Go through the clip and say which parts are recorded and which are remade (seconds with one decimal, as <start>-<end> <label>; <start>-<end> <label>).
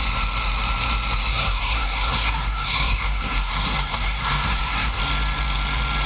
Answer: 0.0-1.3 recorded; 1.3-5.0 remade; 5.0-6.1 recorded